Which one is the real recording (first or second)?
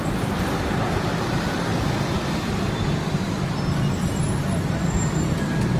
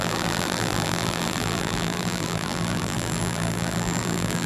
first